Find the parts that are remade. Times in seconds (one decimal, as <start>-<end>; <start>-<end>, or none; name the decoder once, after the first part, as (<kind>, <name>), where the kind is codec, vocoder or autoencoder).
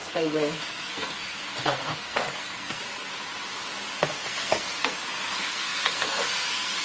0.0-2.8 (codec, SNAC); 4.0-6.8